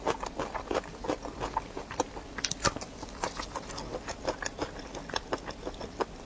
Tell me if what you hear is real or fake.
real